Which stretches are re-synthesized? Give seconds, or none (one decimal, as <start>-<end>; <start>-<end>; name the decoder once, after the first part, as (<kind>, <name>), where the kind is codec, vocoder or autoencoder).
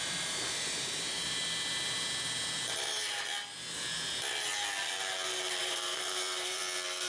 0.0-1.4 (vocoder, BigVGAN v2); 5.6-6.6